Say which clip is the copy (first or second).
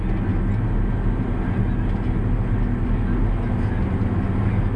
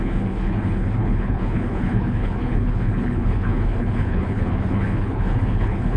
second